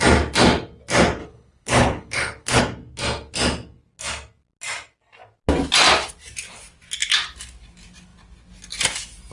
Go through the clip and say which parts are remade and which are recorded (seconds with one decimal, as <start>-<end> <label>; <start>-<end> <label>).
0.0-1.2 recorded; 1.2-2.6 remade; 2.6-9.3 recorded